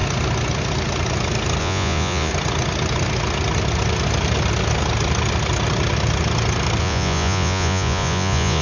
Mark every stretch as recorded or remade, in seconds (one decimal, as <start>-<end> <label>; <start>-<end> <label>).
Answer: 0.0-1.6 recorded; 1.6-2.3 remade; 2.3-6.8 recorded; 6.8-8.6 remade

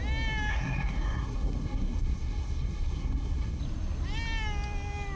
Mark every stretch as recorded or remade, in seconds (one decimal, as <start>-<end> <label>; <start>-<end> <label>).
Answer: 0.0-0.5 recorded; 0.5-3.6 remade; 3.6-5.2 recorded

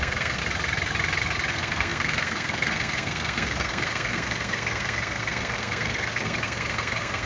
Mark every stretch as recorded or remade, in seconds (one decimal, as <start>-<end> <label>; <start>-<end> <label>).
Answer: 0.0-0.4 remade; 0.4-1.5 recorded; 1.5-7.3 remade

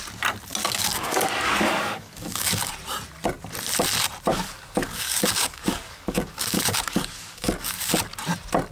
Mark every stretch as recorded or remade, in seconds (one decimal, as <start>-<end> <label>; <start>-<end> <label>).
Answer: 0.0-0.6 recorded; 0.6-2.7 remade; 2.7-4.3 recorded; 4.3-7.9 remade; 7.9-8.7 recorded